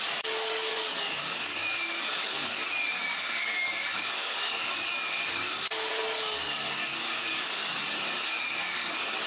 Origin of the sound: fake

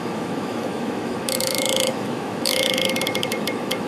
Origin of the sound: fake